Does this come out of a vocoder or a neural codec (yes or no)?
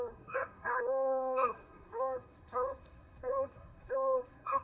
yes